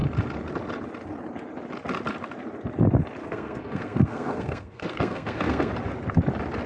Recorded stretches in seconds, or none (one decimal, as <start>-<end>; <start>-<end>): 0.0-3.2; 5.7-6.7